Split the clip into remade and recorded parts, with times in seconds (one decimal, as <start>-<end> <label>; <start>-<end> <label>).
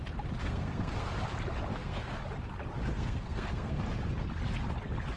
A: 0.0-0.4 recorded; 0.4-1.1 remade; 1.1-1.7 recorded; 1.7-2.2 remade; 2.2-2.9 recorded; 2.9-3.8 remade; 3.8-5.2 recorded